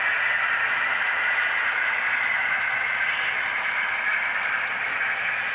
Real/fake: real